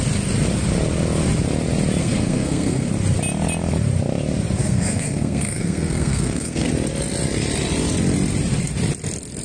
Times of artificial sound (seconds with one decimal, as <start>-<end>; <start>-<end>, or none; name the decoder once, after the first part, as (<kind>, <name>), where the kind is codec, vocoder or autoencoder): 2.0-2.9 (codec, SNAC); 4.6-6.7